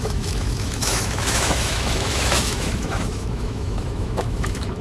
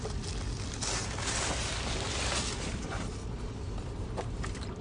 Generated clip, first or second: first